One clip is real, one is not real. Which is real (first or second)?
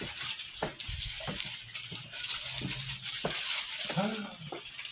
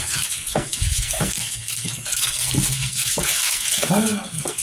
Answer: first